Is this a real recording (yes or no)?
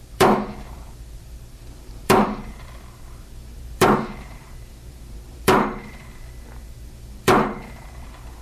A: no